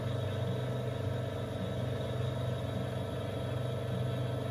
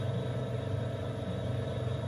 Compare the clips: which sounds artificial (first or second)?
second